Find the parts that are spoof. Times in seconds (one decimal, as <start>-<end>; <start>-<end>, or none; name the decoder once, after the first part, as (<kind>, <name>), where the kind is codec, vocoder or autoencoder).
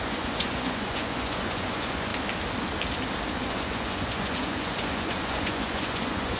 0.0-2.1 (vocoder, Vocos); 3.4-6.4